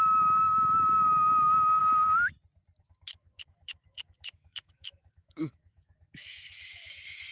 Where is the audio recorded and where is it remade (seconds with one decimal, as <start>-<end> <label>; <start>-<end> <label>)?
0.0-1.8 remade; 1.8-2.8 recorded; 2.8-7.3 remade